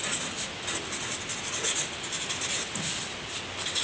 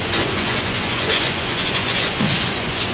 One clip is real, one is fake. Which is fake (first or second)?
second